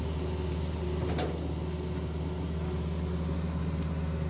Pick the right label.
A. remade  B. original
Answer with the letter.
B